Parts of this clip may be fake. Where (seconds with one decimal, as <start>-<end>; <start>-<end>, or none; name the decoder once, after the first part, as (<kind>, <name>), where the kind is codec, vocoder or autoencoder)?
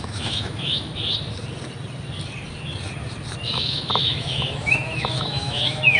0.0-0.9 (autoencoder, DAC-VAE); 3.4-6.0